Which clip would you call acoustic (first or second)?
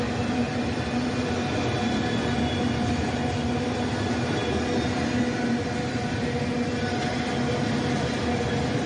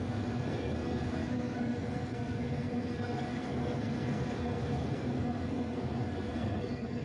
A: first